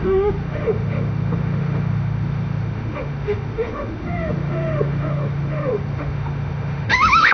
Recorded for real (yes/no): no